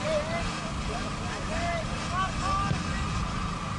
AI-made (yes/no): no